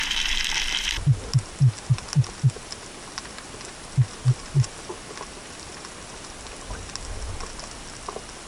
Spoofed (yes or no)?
no